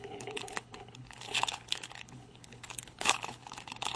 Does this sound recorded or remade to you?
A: remade